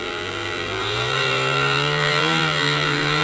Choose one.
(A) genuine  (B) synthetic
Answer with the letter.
B